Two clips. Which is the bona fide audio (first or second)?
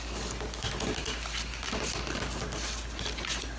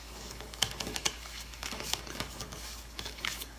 first